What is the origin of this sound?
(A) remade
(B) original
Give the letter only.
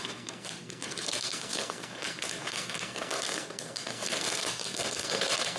A